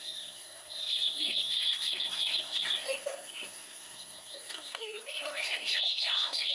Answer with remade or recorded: remade